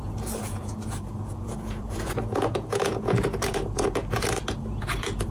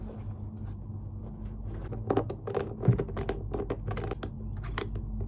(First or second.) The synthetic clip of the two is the first